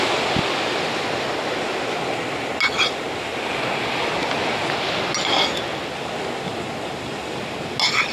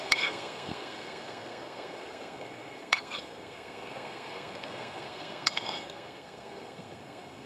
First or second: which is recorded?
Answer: first